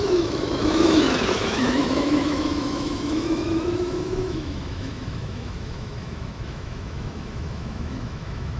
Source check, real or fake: fake